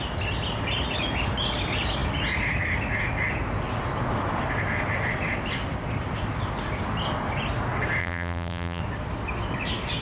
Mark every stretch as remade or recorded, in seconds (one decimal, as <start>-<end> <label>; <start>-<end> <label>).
0.0-8.0 recorded; 8.0-8.8 remade; 8.8-10.0 recorded